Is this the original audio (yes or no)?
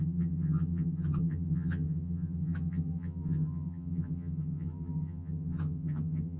no